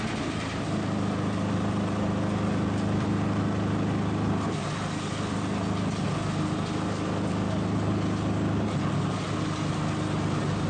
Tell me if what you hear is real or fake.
real